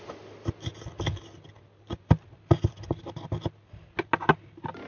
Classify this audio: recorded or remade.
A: recorded